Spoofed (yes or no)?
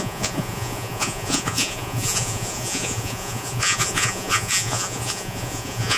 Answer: yes